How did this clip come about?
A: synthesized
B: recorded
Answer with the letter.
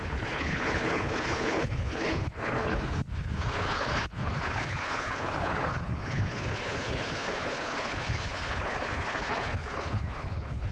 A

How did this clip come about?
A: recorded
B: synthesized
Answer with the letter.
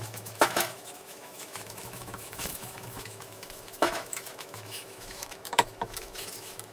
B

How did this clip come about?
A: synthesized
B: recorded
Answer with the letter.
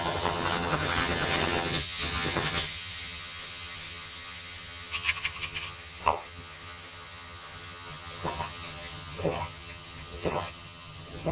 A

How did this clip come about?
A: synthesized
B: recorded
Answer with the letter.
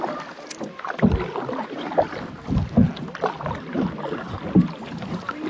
B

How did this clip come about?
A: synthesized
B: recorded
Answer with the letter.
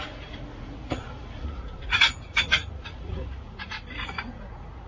A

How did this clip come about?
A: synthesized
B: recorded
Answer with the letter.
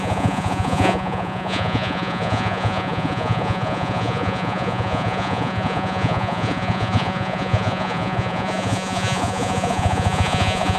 A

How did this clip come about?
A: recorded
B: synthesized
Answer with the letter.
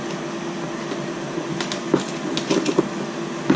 A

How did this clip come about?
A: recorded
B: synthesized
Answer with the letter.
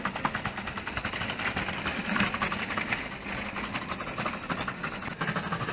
A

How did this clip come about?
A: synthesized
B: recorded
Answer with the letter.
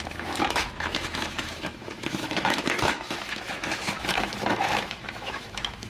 A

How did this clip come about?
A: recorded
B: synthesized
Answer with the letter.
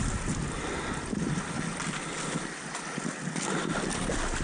A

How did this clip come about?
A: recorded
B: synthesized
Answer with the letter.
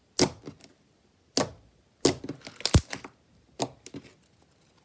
A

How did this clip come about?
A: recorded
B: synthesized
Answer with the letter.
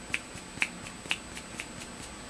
A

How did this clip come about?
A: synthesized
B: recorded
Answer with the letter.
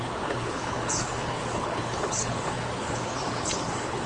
A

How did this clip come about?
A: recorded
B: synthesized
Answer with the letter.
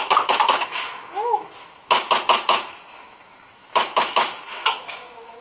B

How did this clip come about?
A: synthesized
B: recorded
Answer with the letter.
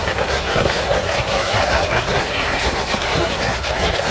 A